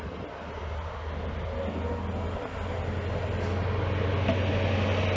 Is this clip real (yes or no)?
yes